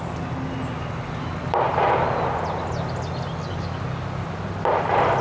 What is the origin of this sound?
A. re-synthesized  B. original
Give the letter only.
B